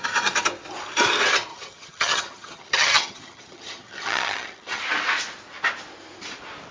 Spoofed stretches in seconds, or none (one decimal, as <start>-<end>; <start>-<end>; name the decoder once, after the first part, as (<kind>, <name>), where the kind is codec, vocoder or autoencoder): 1.5-4.8 (vocoder, HiFi-GAN)